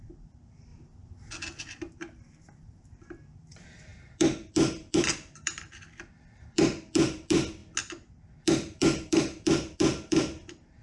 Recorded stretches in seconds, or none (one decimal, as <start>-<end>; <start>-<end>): 0.7-1.6; 7.6-8.4